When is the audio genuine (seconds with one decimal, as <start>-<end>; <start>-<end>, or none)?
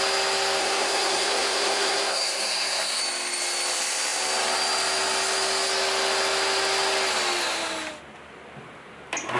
0.0-0.6; 3.0-9.4